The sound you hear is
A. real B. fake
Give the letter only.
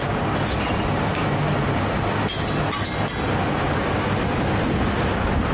A